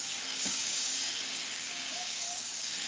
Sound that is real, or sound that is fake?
fake